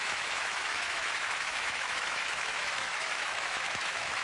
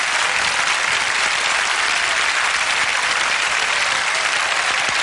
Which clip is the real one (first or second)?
second